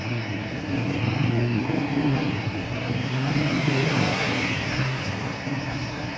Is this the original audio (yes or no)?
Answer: no